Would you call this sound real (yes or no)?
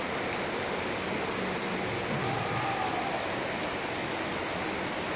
no